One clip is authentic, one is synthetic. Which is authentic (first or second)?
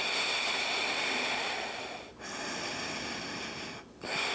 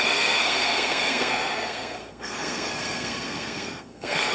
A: first